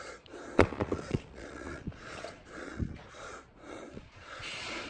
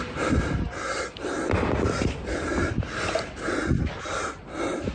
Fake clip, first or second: first